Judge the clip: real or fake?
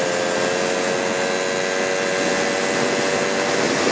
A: real